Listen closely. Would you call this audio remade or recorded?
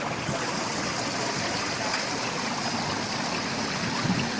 recorded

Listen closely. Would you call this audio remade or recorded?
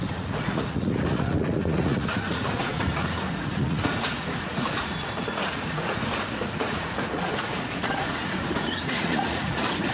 remade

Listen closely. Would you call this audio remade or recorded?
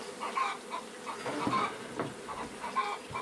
recorded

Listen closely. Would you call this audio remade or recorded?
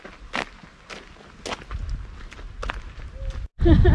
recorded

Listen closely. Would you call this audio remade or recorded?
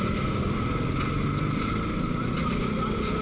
recorded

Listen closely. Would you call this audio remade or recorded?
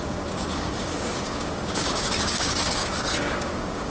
remade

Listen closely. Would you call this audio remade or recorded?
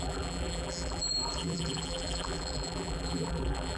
remade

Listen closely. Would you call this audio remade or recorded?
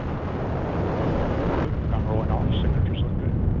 remade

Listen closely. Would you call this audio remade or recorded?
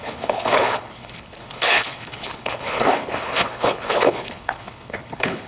remade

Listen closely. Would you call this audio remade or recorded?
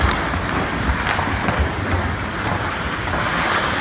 recorded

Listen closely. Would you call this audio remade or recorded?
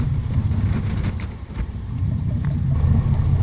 remade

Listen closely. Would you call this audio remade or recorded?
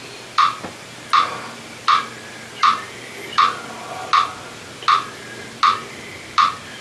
recorded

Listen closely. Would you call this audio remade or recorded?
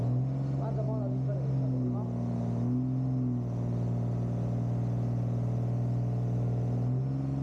recorded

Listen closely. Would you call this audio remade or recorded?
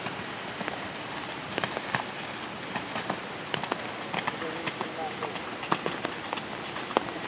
recorded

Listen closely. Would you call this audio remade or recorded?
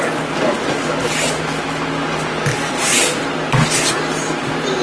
recorded